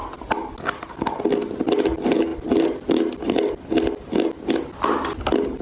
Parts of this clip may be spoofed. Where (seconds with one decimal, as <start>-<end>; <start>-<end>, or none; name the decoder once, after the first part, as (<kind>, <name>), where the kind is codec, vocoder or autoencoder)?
none